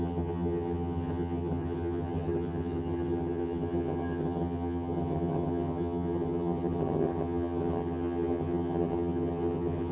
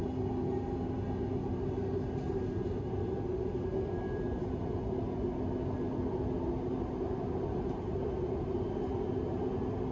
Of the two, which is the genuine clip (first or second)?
second